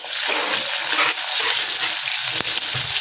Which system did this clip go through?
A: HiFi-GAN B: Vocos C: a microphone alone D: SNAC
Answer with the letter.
C